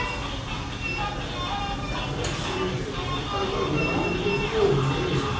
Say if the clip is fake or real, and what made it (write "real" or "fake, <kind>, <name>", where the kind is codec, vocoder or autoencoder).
real